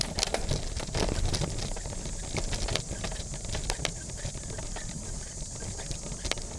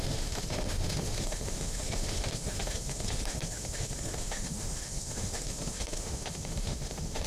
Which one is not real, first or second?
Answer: second